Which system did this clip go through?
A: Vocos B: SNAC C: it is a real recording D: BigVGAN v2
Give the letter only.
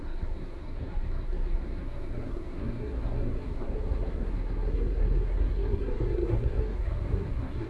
B